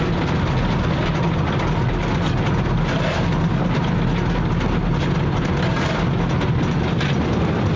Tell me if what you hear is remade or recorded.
recorded